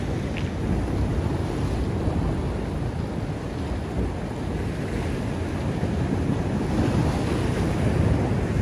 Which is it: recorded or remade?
recorded